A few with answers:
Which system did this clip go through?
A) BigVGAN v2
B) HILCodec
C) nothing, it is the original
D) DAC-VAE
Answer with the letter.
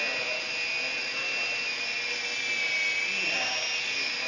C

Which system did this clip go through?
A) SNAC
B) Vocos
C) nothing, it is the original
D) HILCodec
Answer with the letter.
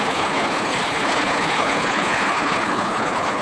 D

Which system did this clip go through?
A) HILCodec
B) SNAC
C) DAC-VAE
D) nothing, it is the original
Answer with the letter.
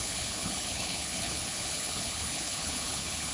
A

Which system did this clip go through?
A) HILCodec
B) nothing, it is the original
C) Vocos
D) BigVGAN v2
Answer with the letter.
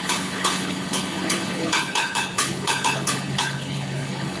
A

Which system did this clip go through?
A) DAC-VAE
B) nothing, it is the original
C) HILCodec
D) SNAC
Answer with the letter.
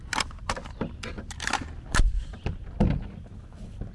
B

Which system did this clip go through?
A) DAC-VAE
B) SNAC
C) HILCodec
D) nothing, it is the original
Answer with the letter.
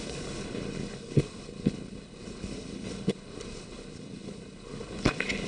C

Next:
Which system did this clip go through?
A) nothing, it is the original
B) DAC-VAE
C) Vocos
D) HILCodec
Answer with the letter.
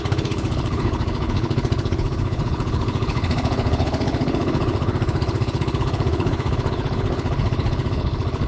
D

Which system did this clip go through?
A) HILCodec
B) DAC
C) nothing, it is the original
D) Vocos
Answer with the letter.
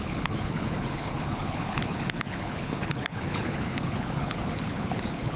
A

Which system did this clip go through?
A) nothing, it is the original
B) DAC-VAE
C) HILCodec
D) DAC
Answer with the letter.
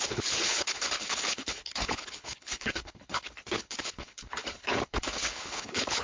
C